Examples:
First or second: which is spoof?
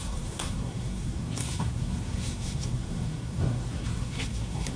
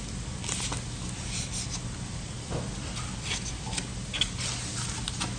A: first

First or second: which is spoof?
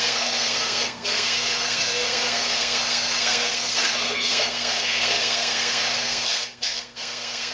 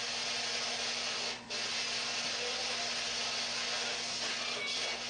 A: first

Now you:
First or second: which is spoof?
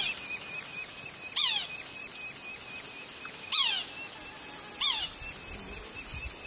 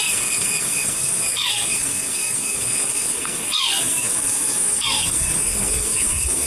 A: second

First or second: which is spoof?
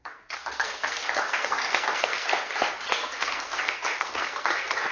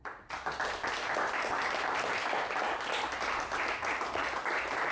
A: first